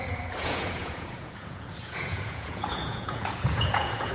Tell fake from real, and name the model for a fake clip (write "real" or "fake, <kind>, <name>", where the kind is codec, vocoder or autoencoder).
fake, vocoder, Vocos